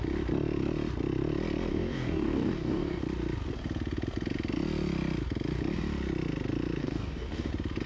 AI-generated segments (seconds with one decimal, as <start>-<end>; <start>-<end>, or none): 1.7-3.0; 6.8-7.5